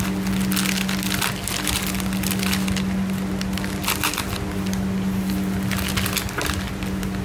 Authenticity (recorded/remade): recorded